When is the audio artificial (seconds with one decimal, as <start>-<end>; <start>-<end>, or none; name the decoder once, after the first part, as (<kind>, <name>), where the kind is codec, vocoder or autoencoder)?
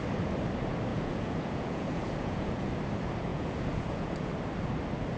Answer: 0.9-2.7 (vocoder, Vocos); 3.3-4.3